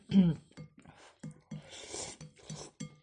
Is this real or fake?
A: real